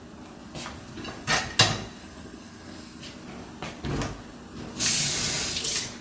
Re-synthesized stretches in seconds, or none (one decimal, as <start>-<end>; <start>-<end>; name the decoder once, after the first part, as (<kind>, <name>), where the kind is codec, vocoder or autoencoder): 2.0-3.0 (codec, SNAC)